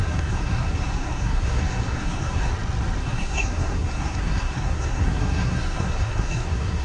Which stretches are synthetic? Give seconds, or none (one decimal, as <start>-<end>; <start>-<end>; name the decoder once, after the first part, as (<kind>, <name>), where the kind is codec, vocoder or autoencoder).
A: 0.0-2.5 (codec, SNAC); 3.0-6.8